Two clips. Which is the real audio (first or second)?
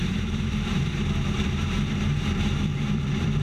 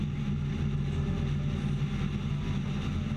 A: second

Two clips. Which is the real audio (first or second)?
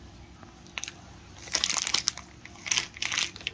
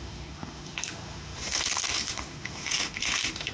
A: first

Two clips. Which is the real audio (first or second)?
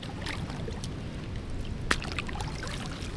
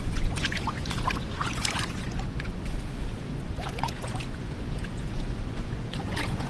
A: first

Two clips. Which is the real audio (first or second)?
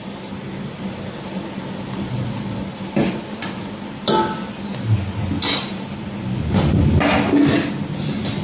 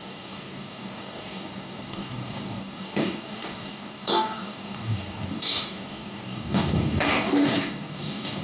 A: first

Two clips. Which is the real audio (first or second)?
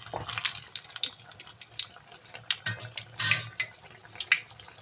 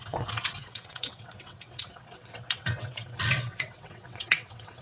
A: first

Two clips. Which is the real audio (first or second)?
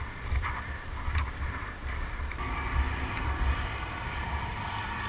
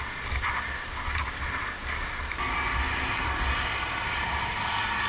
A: second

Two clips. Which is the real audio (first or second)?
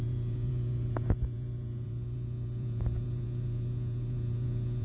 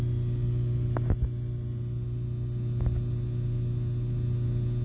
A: second